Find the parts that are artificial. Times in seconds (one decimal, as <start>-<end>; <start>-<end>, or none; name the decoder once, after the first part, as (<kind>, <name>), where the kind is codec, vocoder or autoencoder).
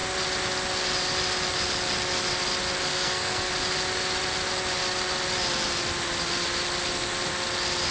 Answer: 2.9-3.5 (codec, SNAC)